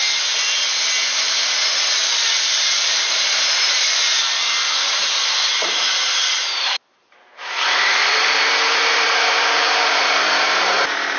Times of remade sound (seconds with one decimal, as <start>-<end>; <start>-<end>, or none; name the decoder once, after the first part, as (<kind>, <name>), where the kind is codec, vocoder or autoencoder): 2.3-11.2 (vocoder, BigVGAN v2)